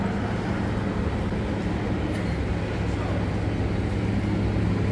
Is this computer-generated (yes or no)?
no